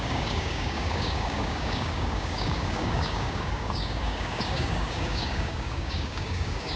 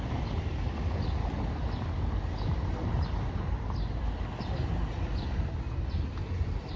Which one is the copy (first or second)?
first